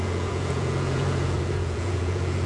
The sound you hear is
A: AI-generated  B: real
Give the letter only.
A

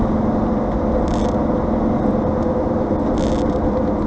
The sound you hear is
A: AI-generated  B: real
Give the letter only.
B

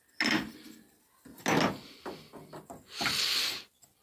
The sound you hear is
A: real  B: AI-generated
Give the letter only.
A